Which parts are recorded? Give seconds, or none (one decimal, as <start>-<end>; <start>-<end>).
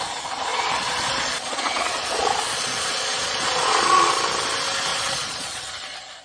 0.0-0.5; 4.1-4.9; 5.7-6.2